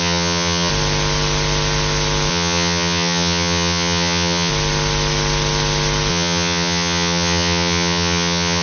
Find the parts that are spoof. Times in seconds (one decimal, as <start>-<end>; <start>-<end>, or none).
0.0-0.7; 2.3-4.5; 6.1-8.6